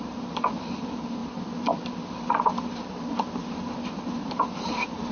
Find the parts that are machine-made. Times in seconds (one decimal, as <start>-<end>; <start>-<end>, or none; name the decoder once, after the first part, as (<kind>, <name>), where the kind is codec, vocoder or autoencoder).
0.0-1.2 (vocoder, BigVGAN v2); 4.3-5.1